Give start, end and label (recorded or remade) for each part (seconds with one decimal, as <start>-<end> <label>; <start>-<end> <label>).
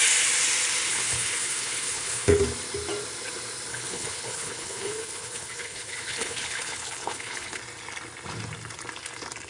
0.0-0.9 recorded; 0.9-2.4 remade; 2.4-3.7 recorded; 3.7-7.6 remade; 7.6-9.5 recorded